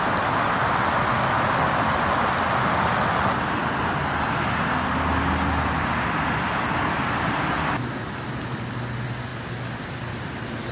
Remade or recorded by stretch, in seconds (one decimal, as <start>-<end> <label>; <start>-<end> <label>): 0.0-10.7 recorded